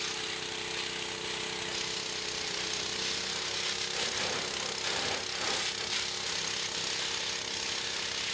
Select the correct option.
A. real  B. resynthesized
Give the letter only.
A